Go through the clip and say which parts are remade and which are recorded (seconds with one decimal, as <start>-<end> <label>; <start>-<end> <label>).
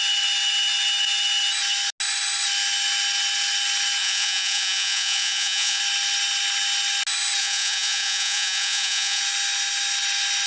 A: 0.0-4.0 recorded; 4.0-5.8 remade; 5.8-7.4 recorded; 7.4-9.2 remade; 9.2-10.5 recorded